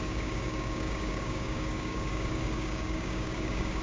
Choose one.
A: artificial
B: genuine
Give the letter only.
A